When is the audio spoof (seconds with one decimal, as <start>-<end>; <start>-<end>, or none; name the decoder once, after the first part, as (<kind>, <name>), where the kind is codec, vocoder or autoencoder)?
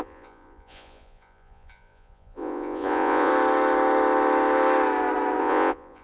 0.0-3.3 (vocoder, Vocos); 5.4-6.0